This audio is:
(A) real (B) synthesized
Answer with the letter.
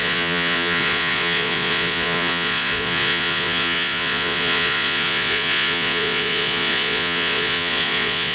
B